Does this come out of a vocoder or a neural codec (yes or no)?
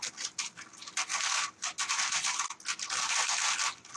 no